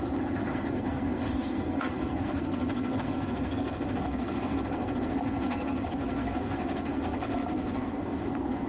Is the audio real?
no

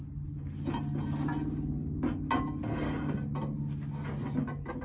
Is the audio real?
yes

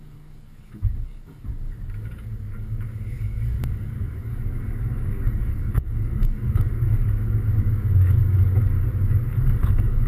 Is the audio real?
no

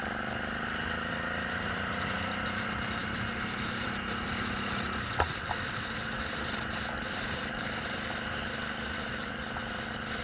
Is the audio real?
no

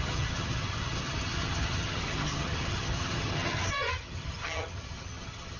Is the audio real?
no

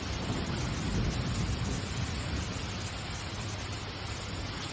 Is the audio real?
yes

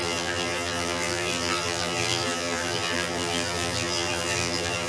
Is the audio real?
no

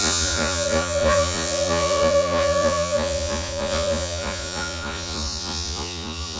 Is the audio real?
no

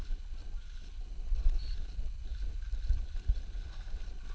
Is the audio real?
yes